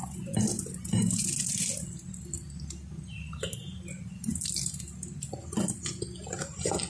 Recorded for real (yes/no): yes